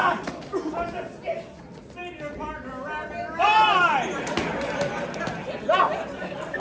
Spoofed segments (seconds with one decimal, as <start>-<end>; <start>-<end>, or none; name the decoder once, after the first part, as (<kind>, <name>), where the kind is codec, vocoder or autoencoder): none